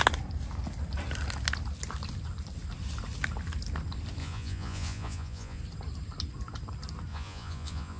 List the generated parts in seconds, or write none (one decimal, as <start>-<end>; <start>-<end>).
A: 4.2-5.6; 7.1-8.0